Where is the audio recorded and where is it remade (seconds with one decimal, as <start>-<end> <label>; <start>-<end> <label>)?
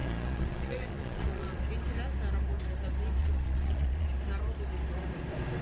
0.0-1.6 remade; 1.6-3.2 recorded; 3.2-4.1 remade; 4.1-5.6 recorded